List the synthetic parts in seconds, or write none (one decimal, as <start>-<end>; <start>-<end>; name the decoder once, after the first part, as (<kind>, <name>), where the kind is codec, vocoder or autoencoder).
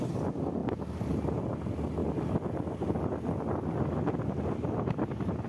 none